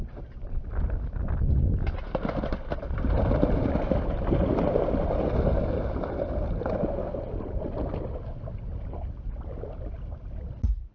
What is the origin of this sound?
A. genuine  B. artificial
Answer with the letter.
A